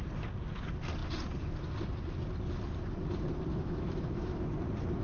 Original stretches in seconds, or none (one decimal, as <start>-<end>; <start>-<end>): 0.0-3.5; 4.5-5.0